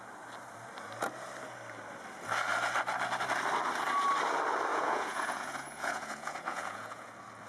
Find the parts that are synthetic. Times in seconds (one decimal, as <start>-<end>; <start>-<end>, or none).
4.7-7.1

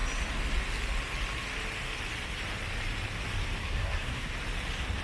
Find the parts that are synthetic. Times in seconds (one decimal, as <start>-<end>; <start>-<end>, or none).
3.6-4.3

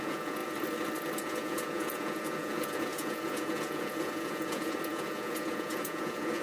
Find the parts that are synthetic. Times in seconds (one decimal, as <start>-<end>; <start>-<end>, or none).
0.0-0.4; 1.2-6.4

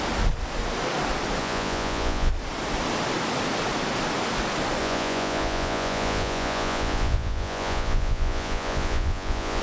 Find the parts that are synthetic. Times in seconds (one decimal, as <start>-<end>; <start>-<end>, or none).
1.4-2.3; 4.8-9.6

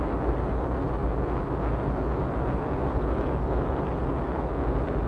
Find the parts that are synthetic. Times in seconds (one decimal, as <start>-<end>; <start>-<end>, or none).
none

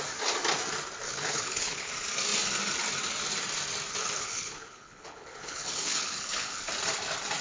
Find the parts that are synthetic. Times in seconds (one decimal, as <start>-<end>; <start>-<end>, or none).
1.0-1.9; 4.0-6.7

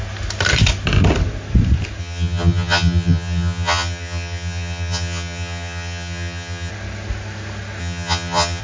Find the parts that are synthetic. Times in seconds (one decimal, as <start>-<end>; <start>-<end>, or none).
2.0-6.7; 7.8-8.6